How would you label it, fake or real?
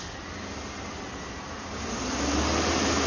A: real